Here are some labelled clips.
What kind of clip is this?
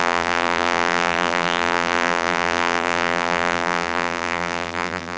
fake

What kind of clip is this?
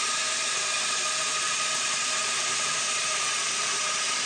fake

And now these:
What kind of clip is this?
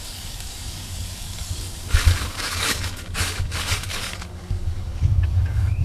fake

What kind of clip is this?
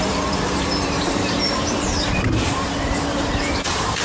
fake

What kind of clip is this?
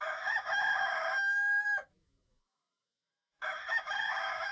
fake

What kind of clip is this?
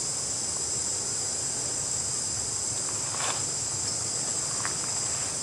real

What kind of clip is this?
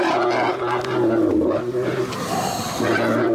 real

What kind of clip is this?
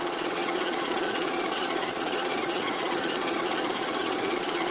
fake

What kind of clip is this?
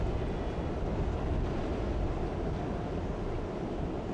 real